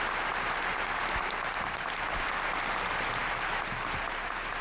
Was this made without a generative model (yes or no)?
yes